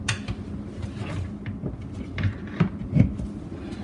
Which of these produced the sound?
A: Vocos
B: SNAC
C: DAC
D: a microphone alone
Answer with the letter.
D